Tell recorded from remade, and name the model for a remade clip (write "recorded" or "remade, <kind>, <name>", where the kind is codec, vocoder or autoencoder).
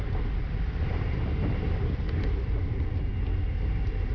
recorded